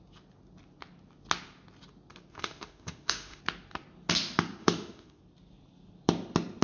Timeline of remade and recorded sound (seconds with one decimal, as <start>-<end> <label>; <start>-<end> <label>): 0.0-2.3 recorded; 2.3-3.4 remade; 3.4-4.6 recorded; 4.6-5.2 remade; 5.2-6.6 recorded